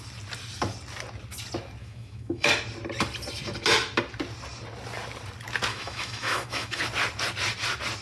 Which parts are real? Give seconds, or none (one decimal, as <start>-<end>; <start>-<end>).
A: 0.0-1.8; 2.5-5.7; 6.8-8.0